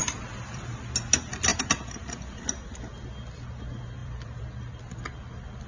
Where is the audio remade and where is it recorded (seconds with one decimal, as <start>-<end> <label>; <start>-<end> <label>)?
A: 0.0-0.8 remade; 0.8-4.0 recorded; 4.0-4.8 remade; 4.8-5.7 recorded